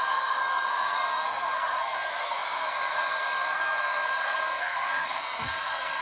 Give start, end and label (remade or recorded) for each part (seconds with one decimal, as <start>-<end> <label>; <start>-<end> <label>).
0.0-6.0 remade